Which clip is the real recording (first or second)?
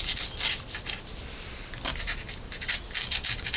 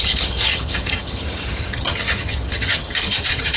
first